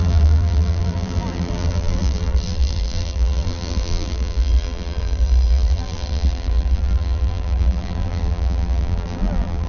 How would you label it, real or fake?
fake